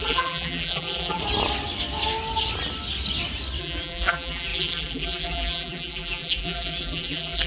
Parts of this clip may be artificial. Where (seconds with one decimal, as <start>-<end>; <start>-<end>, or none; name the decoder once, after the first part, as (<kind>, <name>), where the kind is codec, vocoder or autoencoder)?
0.0-1.2 (vocoder, BigVGAN v2); 3.6-7.5